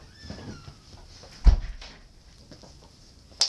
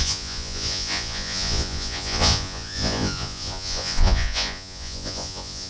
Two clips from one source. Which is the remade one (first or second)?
second